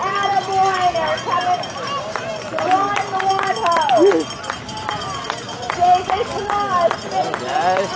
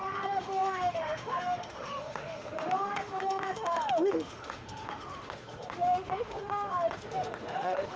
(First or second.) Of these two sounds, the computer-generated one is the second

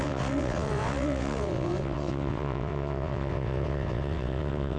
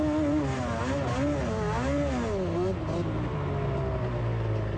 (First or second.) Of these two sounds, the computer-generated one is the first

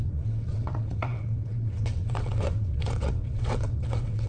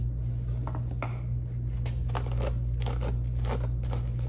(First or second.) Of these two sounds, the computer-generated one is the first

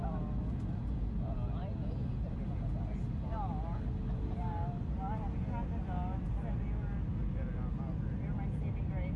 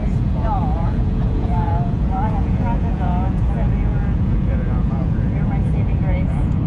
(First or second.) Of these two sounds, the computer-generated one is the second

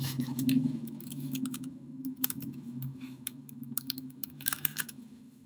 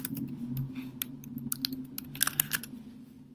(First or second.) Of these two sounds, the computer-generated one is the first